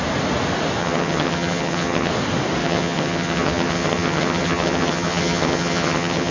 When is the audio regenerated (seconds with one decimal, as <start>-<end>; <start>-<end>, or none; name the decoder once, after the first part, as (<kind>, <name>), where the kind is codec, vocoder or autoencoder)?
0.8-2.1 (vocoder, HiFi-GAN); 2.6-6.3